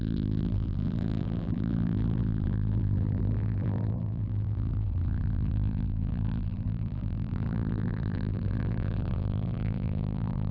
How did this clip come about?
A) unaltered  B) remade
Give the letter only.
B